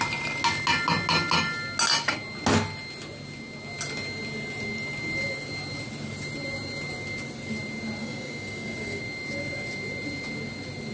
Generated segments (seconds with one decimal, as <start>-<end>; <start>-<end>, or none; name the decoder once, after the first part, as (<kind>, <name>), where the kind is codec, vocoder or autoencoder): 8.0-9.0 (codec, DAC)